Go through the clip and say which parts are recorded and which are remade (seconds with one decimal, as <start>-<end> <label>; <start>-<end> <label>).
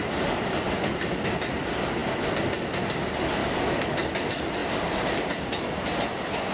0.0-3.4 recorded; 3.4-4.1 remade; 4.1-6.5 recorded